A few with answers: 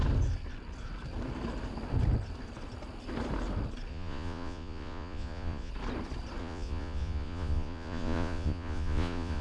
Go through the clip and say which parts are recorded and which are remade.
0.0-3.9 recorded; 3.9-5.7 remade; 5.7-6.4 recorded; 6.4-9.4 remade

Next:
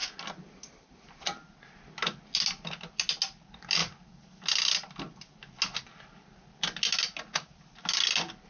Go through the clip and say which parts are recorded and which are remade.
0.0-8.5 recorded

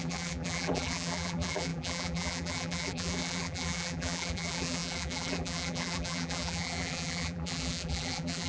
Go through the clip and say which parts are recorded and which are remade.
0.0-8.5 remade